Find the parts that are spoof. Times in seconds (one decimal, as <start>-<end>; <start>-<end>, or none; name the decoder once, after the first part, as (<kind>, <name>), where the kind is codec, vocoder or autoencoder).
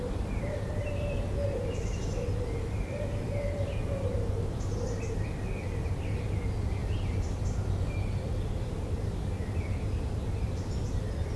0.0-11.4 (vocoder, BigVGAN v2)